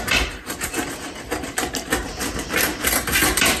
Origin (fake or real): real